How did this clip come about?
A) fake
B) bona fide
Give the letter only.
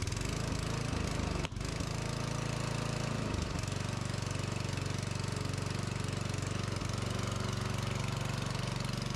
B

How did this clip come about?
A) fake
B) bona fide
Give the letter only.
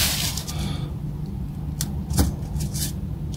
B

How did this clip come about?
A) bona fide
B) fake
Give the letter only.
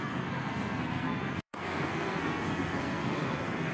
B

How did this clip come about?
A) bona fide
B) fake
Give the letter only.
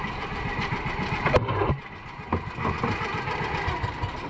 A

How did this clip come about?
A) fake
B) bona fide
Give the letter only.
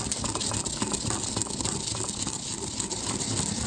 B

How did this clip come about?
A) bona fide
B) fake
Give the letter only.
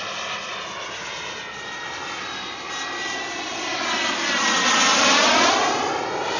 A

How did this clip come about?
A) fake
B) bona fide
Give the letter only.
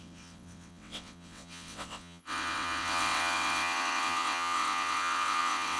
A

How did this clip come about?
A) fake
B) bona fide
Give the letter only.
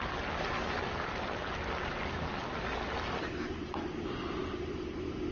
B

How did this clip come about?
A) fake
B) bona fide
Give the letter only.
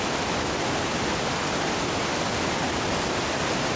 B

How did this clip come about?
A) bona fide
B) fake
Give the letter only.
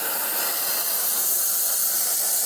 A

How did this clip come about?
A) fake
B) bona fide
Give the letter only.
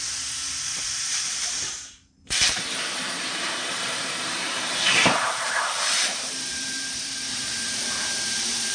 A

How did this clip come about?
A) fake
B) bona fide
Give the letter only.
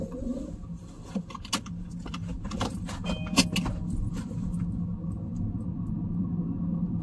B